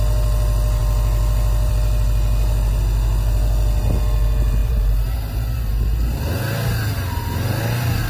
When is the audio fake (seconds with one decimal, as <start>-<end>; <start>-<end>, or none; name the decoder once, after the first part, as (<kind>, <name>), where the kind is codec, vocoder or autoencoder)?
4.6-6.2 (vocoder, BigVGAN v2)